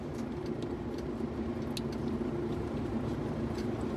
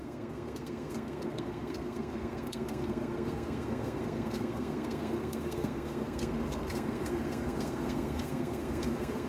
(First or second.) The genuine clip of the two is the first